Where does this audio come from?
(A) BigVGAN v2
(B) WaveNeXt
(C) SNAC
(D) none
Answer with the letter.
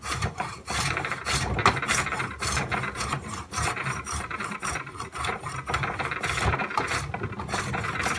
A